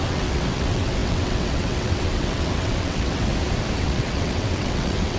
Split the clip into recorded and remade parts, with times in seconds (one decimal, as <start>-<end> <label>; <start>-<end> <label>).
0.0-3.3 remade; 3.3-3.8 recorded; 3.8-5.2 remade